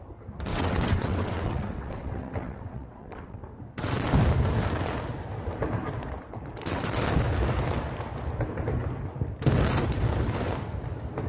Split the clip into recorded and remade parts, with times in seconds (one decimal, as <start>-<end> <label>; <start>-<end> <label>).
0.0-0.5 recorded; 0.5-3.4 remade; 3.4-11.3 recorded